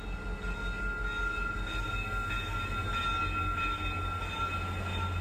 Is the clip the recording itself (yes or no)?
yes